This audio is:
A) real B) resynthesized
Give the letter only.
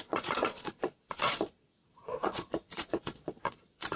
B